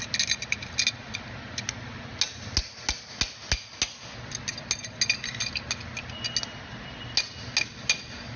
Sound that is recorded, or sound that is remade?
recorded